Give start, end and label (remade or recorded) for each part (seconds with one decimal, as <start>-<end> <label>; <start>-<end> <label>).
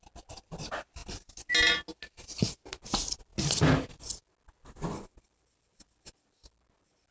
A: 0.0-7.1 recorded